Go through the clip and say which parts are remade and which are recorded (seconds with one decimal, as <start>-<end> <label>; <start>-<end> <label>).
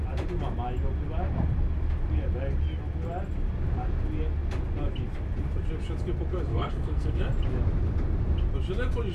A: 0.0-6.5 recorded; 6.5-7.2 remade; 7.2-9.1 recorded